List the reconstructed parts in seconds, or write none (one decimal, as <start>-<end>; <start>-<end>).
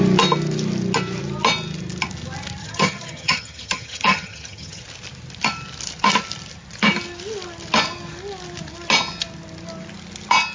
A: 2.6-4.8